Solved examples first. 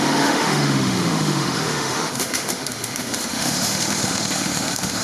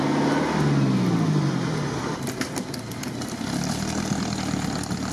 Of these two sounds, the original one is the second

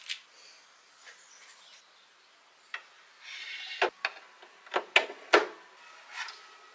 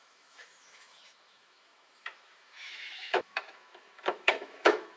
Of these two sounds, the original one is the first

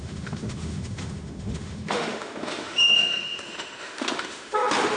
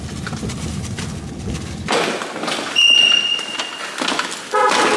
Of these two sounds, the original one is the second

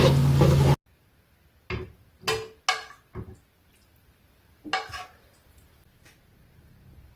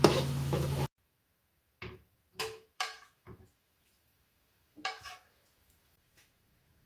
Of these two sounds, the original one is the first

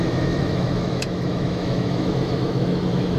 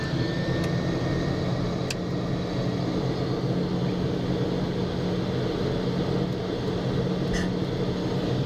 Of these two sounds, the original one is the second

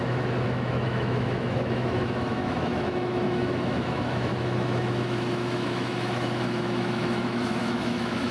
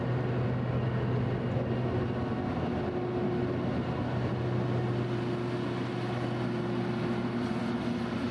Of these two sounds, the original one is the second